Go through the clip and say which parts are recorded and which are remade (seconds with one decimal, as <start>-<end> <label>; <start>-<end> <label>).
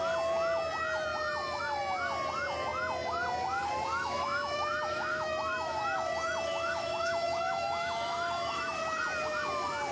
0.0-3.9 recorded; 3.9-9.0 remade; 9.0-9.9 recorded